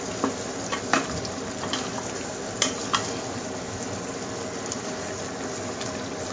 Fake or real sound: real